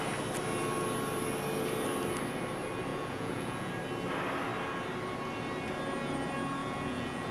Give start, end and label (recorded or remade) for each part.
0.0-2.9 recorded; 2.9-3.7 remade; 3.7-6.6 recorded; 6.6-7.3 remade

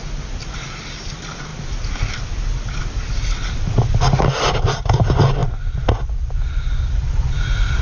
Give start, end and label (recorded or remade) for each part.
0.0-7.8 recorded

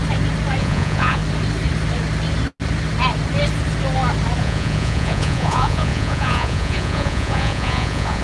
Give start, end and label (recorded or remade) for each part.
0.0-0.6 recorded; 0.6-1.2 remade; 1.2-4.4 recorded; 4.4-8.2 remade

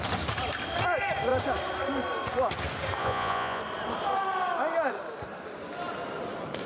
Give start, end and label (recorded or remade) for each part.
0.0-3.0 recorded; 3.0-3.6 remade; 3.6-6.7 recorded

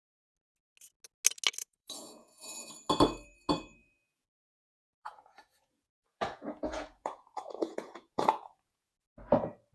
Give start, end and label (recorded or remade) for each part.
0.0-1.6 recorded; 1.6-2.7 remade; 2.7-3.8 recorded; 3.8-8.9 remade; 8.9-9.7 recorded